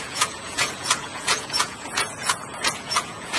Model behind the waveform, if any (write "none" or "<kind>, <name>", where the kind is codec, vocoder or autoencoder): vocoder, Vocos